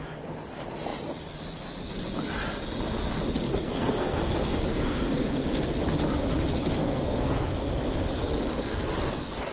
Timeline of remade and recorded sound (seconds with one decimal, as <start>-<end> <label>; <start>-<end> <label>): 0.0-3.5 recorded; 3.5-4.2 remade; 4.2-4.7 recorded; 4.7-5.7 remade; 5.7-6.8 recorded; 6.8-7.4 remade; 7.4-9.5 recorded